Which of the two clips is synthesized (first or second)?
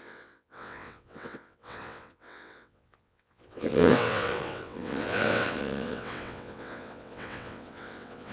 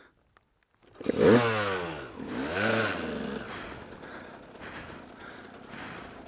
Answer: first